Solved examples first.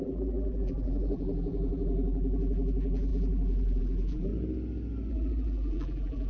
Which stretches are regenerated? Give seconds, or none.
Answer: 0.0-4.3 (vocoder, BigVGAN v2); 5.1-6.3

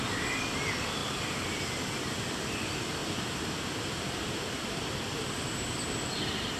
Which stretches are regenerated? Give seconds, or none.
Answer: 3.0-5.2 (vocoder, BigVGAN v2)

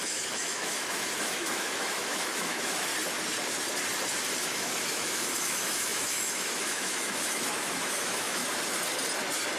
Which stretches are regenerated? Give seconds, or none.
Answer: 0.0-2.9 (autoencoder, DAC-VAE); 4.4-8.4

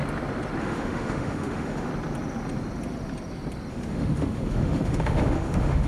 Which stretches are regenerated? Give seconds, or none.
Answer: 0.6-1.9 (autoencoder, DAC-VAE); 3.7-5.9

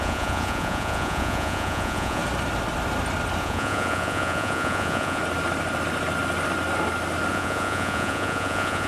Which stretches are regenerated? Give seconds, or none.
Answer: 0.0-2.2 (vocoder, Vocos); 3.4-5.2; 7.3-8.9

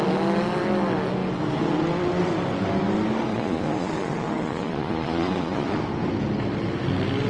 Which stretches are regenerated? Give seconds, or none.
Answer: 3.3-5.8 (vocoder, Vocos)

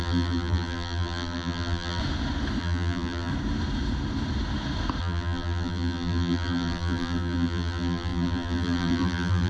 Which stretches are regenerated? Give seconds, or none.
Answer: 0.0-2.0 (vocoder, BigVGAN v2); 2.6-3.3; 5.0-9.5

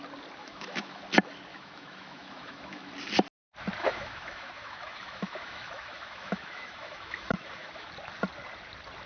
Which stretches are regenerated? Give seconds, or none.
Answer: 0.4-1.0 (autoencoder, DAC-VAE); 1.5-2.9; 3.8-7.9